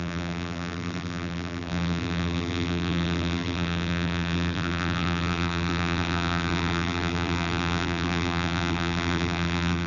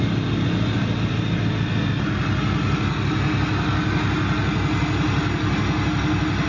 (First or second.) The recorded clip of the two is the second